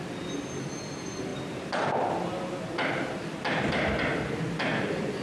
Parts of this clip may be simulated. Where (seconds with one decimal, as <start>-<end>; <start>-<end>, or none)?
none